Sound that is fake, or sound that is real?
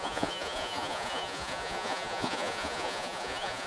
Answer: fake